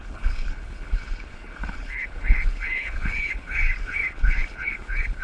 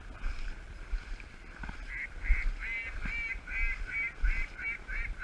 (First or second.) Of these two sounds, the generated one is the first